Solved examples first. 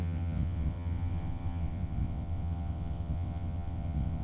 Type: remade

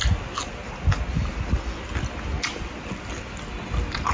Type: recorded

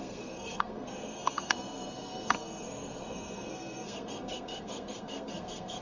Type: remade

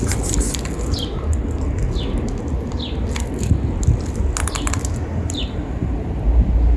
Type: recorded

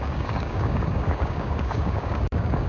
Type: remade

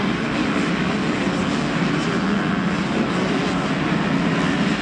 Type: recorded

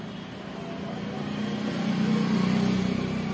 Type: recorded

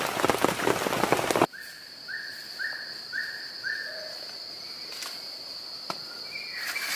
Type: recorded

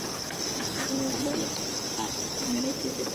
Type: remade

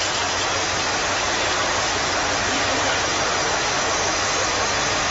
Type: recorded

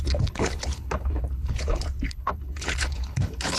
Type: remade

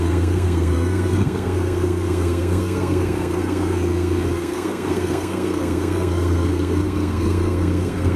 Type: remade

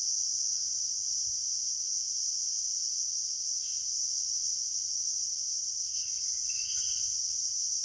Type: remade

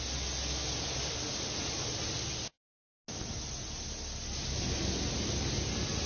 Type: recorded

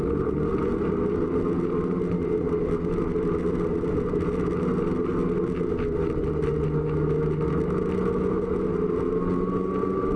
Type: recorded